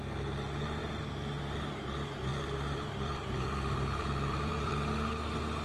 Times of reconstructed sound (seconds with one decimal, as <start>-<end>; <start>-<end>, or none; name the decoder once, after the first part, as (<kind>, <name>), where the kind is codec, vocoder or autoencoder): 0.8-1.4 (vocoder, BigVGAN v2); 2.3-4.7